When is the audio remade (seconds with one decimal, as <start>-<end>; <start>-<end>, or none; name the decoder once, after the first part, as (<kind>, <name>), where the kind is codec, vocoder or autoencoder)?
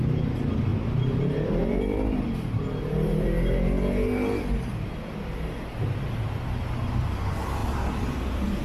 7.6-8.6 (vocoder, BigVGAN v2)